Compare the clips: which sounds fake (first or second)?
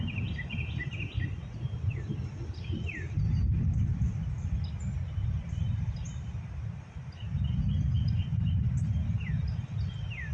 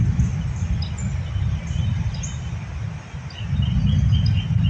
first